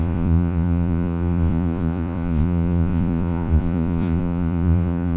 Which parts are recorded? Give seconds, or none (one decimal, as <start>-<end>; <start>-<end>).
none